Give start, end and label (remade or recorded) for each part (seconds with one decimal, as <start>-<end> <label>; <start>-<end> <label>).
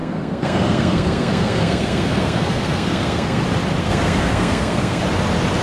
0.0-3.4 remade; 3.4-3.8 recorded; 3.8-5.0 remade; 5.0-5.6 recorded